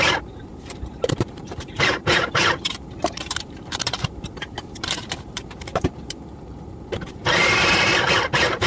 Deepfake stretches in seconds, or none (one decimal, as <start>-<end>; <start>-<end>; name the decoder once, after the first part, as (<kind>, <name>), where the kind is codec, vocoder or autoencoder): 0.0-8.7 (vocoder, BigVGAN v2)